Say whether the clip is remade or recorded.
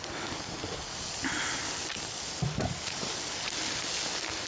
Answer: recorded